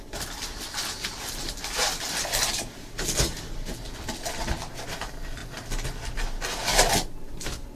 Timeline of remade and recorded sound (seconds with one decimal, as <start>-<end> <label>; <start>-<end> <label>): 0.0-7.8 recorded